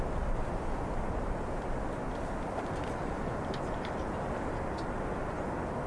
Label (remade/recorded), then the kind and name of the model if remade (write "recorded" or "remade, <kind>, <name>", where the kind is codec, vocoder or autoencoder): recorded